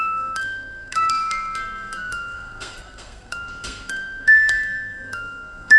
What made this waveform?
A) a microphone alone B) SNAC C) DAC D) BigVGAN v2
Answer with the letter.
B